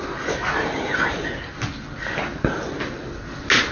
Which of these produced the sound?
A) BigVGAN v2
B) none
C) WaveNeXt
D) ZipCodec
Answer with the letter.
B